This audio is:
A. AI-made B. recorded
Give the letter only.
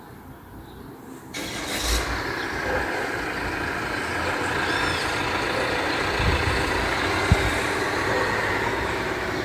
B